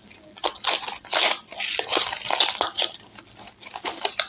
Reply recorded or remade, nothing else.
recorded